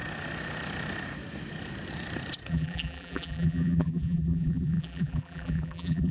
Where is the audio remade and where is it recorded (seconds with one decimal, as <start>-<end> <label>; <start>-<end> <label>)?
0.0-2.5 recorded; 2.5-6.1 remade